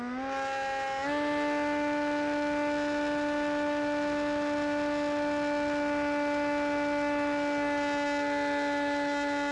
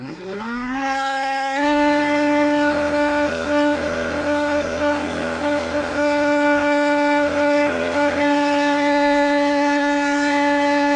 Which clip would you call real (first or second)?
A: first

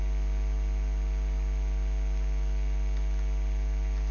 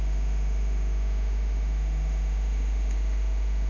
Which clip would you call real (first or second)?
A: first